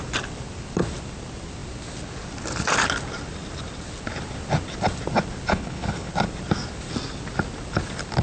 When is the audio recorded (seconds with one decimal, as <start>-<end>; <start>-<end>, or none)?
0.0-5.5; 6.1-8.2